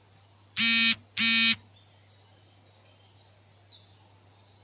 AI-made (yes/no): no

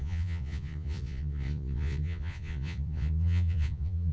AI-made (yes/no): yes